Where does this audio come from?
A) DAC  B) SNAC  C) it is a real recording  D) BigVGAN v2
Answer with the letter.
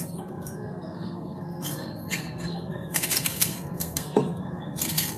B